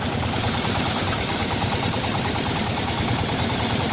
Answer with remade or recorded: remade